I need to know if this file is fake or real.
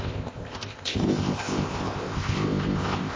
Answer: fake